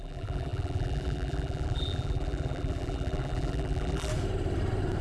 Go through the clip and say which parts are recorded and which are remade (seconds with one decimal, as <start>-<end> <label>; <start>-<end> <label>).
0.0-4.1 remade; 4.1-5.0 recorded